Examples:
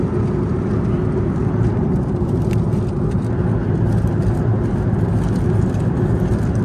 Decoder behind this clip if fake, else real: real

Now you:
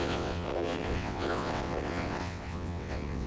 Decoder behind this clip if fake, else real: fake, vocoder, WaveNeXt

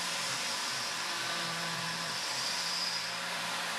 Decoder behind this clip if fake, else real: fake, vocoder, BigVGAN v2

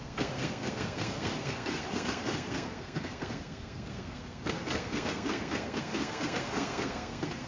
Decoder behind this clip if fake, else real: fake, codec, SNAC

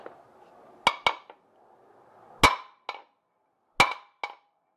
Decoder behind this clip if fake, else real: real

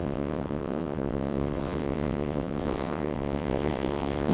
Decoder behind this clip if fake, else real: fake, vocoder, WaveNeXt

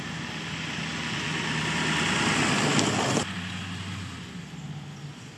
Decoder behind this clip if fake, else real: real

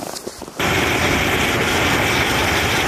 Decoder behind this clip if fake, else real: real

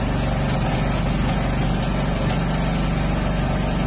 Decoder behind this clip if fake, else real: real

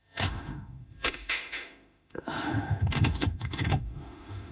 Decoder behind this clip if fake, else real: fake, autoencoder, DAC-VAE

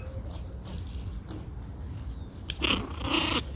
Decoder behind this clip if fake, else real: real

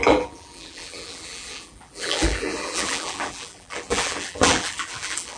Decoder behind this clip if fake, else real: fake, vocoder, BigVGAN v2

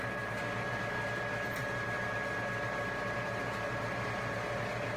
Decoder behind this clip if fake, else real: real